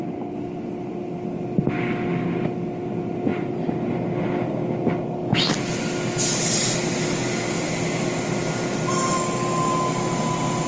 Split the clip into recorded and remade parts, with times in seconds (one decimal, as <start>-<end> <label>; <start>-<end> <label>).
0.0-10.7 recorded